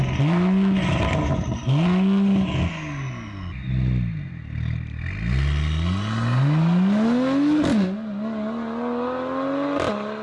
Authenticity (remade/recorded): recorded